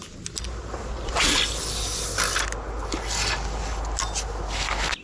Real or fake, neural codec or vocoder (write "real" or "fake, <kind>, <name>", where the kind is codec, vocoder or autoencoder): real